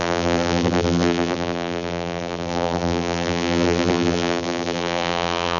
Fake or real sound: fake